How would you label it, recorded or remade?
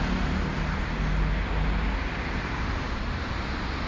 recorded